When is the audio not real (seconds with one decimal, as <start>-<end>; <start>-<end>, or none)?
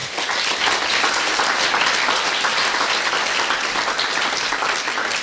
none